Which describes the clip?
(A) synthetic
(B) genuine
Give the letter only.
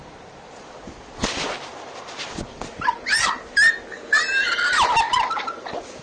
B